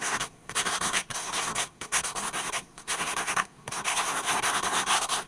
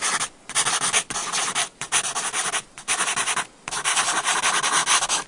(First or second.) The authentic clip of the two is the second